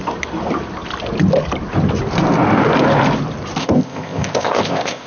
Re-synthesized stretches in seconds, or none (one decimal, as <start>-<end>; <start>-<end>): 3.6-5.1